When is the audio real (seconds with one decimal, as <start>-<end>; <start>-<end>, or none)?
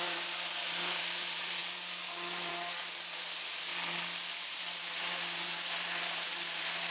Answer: 1.6-2.5; 3.7-4.4